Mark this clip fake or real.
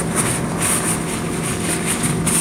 real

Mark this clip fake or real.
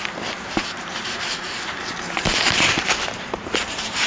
fake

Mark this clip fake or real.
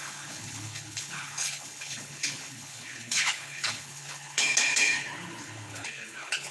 fake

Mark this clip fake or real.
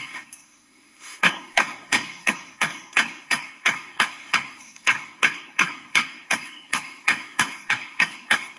fake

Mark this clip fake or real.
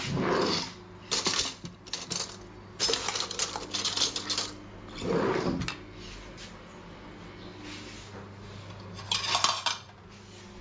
real